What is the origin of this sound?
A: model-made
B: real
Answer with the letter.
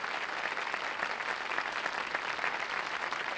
B